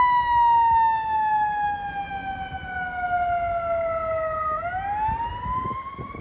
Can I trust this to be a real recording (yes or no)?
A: yes